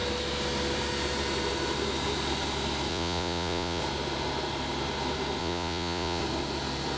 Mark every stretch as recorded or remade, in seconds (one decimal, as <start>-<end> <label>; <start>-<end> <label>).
0.0-2.9 recorded; 2.9-3.8 remade; 3.8-5.4 recorded; 5.4-6.2 remade; 6.2-7.0 recorded